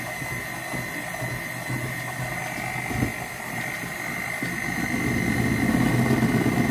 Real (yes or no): yes